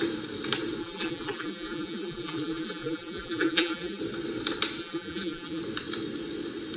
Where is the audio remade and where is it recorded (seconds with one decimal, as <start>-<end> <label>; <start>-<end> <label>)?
0.0-0.8 recorded; 0.8-4.0 remade; 4.0-4.8 recorded; 4.8-5.6 remade; 5.6-6.8 recorded